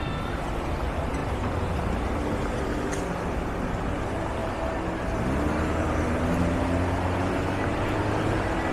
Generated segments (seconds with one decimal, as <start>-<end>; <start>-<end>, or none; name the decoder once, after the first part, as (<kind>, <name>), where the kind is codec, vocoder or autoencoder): none